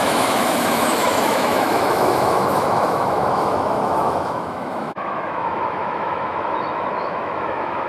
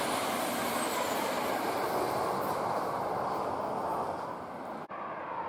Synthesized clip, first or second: first